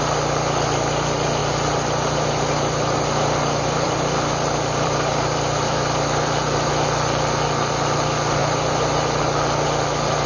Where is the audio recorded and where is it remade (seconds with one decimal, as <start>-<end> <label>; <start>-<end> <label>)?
0.0-1.4 recorded; 1.4-6.7 remade; 6.7-8.4 recorded; 8.4-9.2 remade; 9.2-10.3 recorded